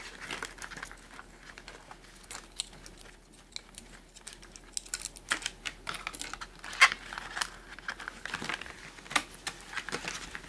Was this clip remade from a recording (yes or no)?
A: no